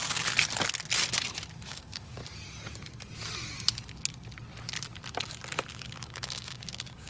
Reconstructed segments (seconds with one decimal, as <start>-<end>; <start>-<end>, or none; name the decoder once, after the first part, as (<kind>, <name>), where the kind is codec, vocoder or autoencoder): 1.7-2.2 (codec, DAC); 5.7-7.1